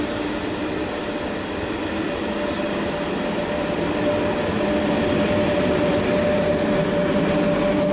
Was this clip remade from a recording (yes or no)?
no